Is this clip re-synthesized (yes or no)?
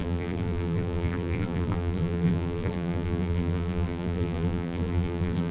yes